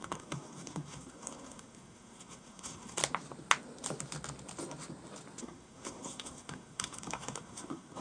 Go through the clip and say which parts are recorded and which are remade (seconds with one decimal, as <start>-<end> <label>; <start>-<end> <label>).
0.0-3.0 remade; 3.0-5.4 recorded; 5.4-8.0 remade